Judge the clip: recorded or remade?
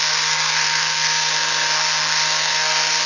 remade